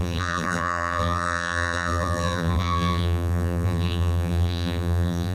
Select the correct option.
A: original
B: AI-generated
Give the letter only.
B